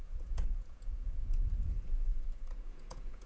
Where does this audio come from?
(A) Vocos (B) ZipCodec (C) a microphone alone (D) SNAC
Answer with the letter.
A